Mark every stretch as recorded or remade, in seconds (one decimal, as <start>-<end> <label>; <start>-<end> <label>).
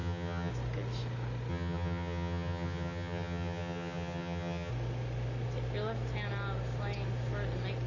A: 0.0-0.5 remade; 0.5-1.5 recorded; 1.5-4.7 remade; 4.7-7.9 recorded